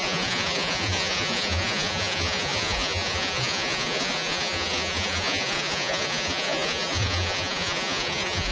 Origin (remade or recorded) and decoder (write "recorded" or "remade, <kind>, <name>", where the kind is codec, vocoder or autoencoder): remade, vocoder, Vocos